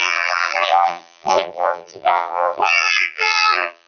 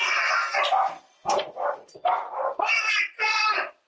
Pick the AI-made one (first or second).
first